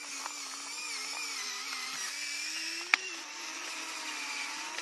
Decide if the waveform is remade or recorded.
recorded